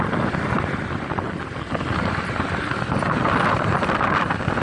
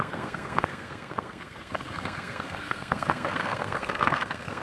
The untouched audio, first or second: first